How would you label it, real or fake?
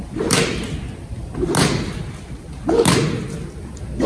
real